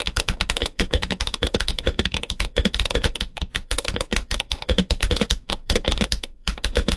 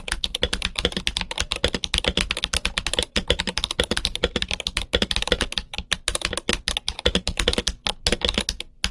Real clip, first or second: second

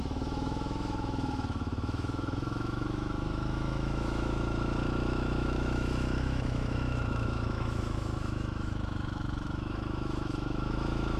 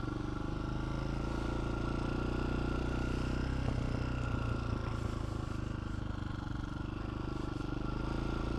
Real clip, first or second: second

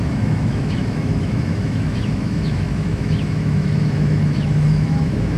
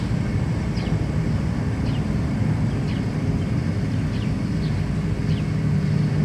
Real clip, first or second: second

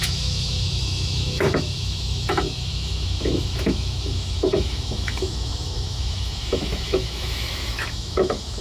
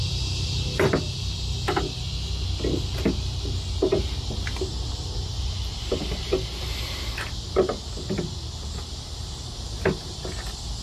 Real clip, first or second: second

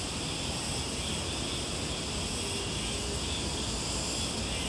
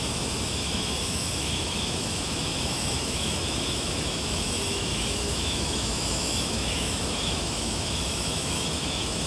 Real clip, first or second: first